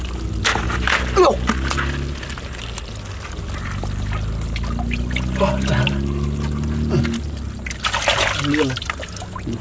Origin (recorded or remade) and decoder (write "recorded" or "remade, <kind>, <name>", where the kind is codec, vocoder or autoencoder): recorded